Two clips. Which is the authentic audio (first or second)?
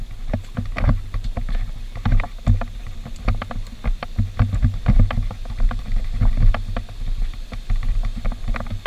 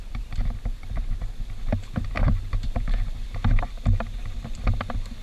first